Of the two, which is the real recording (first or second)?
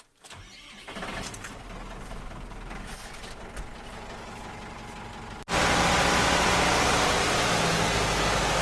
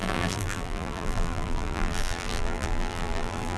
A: first